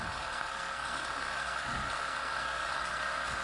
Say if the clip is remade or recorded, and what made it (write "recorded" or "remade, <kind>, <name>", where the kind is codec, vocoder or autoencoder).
remade, codec, SNAC